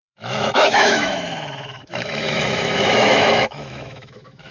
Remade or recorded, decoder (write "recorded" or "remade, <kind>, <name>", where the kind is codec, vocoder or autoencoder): remade, autoencoder, DAC-VAE